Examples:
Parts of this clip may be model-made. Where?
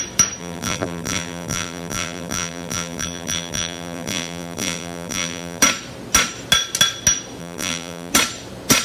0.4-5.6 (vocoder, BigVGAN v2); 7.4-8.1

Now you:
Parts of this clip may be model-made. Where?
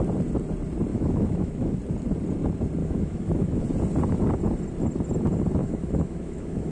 0.9-1.8 (autoencoder, DAC-VAE); 2.8-3.6; 5.6-6.7